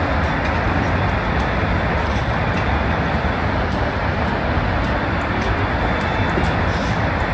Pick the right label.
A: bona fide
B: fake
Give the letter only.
A